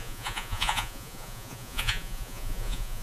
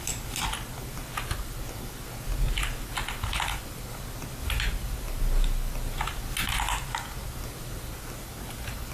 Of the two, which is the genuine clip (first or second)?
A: second